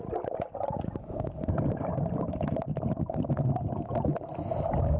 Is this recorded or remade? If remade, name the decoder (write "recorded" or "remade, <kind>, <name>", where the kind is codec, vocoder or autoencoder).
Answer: recorded